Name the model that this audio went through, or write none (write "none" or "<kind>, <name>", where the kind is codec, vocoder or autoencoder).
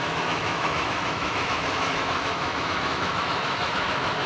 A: autoencoder, DAC-VAE